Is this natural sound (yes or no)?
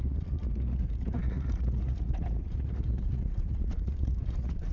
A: no